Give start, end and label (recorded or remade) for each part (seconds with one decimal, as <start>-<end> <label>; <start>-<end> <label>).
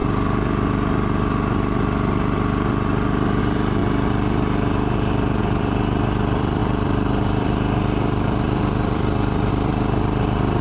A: 0.0-3.4 recorded; 3.4-3.8 remade; 3.8-5.4 recorded; 5.4-10.6 remade